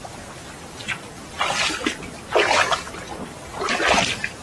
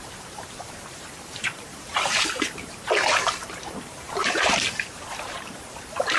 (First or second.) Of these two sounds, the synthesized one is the second